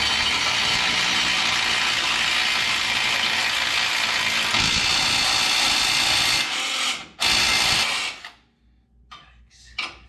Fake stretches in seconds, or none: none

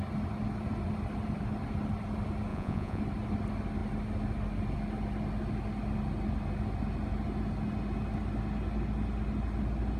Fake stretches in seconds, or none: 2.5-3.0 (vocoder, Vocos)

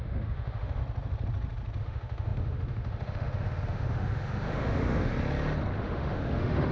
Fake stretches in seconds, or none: 0.0-0.8 (autoencoder, DAC-VAE); 1.8-5.1; 5.8-6.7